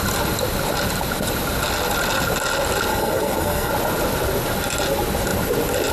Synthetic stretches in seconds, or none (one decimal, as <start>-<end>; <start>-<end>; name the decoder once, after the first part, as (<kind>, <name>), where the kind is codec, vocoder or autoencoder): 2.9-3.7 (codec, SNAC)